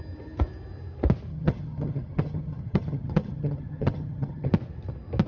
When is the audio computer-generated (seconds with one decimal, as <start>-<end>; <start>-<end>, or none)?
1.3-4.5